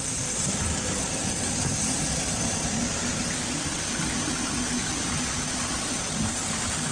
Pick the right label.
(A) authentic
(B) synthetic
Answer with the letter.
A